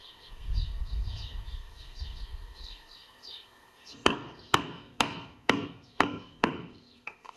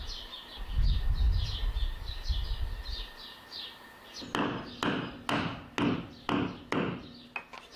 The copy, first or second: first